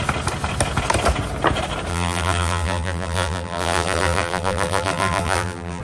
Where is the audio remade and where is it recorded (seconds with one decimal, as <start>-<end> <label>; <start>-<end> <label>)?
0.0-1.9 recorded; 1.9-5.8 remade

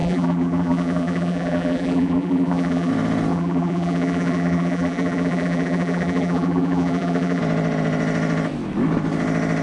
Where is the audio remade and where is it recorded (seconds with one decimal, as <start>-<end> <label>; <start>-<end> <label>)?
0.0-2.9 remade; 2.9-3.3 recorded; 3.3-7.4 remade; 7.4-9.6 recorded

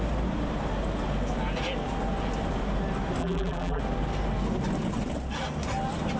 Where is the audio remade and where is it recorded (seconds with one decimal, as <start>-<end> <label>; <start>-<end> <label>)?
0.0-3.2 recorded; 3.2-3.8 remade; 3.8-6.2 recorded

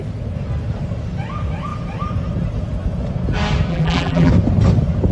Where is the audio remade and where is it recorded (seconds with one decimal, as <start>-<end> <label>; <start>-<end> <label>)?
0.0-3.7 recorded; 3.7-4.3 remade; 4.3-5.1 recorded

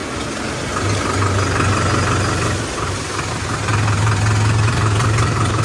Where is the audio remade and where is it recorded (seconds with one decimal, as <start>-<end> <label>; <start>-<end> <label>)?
0.0-3.3 recorded; 3.3-3.7 remade; 3.7-4.5 recorded; 4.5-5.6 remade

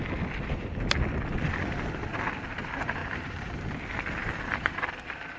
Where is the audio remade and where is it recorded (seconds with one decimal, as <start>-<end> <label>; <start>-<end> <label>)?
0.0-3.0 recorded; 3.0-3.8 remade; 3.8-4.2 recorded; 4.2-4.9 remade; 4.9-5.4 recorded

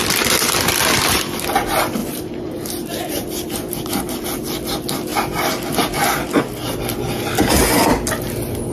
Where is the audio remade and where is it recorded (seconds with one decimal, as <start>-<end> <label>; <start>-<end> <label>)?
0.0-2.0 recorded; 2.0-4.1 remade; 4.1-8.7 recorded

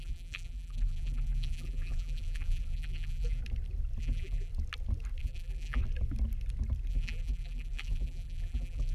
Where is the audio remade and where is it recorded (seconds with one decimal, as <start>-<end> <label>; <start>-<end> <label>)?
0.0-3.4 remade; 3.4-4.0 recorded; 4.0-4.5 remade; 4.5-5.2 recorded; 5.2-5.8 remade; 5.8-6.9 recorded; 6.9-8.9 remade